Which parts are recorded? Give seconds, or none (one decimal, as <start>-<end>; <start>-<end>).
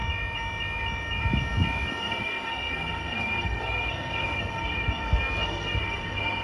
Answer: 0.0-2.0